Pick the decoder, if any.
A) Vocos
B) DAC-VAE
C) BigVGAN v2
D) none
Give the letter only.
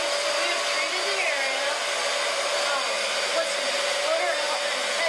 D